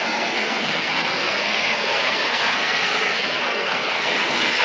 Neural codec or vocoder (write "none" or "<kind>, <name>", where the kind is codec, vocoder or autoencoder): codec, SNAC